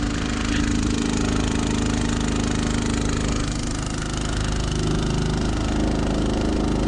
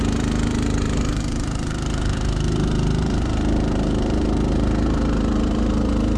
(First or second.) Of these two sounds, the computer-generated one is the second